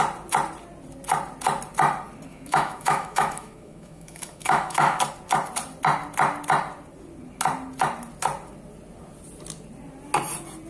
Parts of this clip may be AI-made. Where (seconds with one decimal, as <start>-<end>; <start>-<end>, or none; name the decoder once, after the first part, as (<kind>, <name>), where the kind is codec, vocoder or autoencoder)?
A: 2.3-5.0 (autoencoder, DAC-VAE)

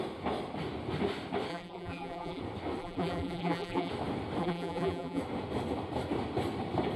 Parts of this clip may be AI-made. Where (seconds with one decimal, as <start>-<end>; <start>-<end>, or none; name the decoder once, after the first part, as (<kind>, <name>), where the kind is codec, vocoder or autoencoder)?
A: 1.5-2.4 (vocoder, BigVGAN v2); 2.8-3.9; 4.4-5.2

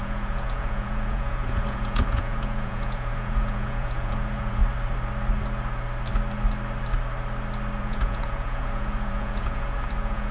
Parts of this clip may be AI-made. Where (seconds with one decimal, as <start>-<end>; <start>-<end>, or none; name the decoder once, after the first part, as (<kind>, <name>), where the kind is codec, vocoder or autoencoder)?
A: 0.0-4.6 (vocoder, Vocos); 7.8-10.3

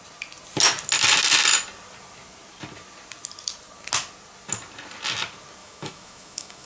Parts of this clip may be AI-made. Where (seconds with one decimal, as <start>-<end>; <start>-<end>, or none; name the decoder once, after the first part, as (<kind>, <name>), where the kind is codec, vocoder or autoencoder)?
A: 5.6-6.7 (autoencoder, DAC-VAE)

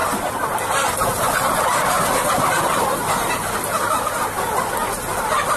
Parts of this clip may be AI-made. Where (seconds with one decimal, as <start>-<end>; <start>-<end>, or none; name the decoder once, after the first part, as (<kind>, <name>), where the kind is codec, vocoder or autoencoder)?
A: none

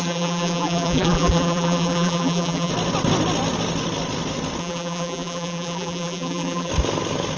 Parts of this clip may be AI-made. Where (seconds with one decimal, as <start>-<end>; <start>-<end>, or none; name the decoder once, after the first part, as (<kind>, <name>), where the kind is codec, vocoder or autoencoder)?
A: 0.0-2.7 (vocoder, BigVGAN v2); 4.6-6.7

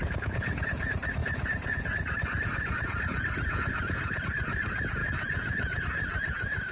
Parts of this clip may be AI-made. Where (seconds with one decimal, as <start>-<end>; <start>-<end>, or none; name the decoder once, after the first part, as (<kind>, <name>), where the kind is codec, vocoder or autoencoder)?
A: 0.0-6.7 (vocoder, Vocos)

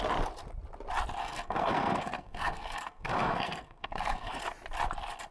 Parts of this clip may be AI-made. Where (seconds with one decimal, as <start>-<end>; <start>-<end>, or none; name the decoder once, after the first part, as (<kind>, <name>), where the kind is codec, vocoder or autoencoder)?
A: 1.2-4.4 (codec, SNAC)